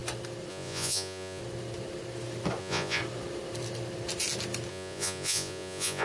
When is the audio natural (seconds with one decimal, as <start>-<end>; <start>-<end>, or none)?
0.0-0.5; 1.4-2.6; 3.0-4.7